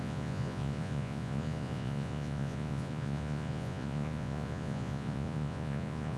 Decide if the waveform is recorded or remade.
remade